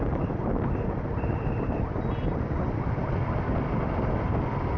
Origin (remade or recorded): recorded